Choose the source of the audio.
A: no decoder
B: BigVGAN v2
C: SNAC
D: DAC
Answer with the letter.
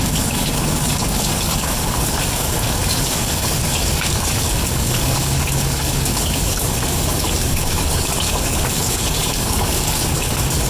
D